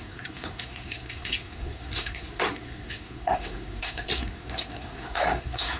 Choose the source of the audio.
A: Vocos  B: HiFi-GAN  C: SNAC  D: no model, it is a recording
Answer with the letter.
C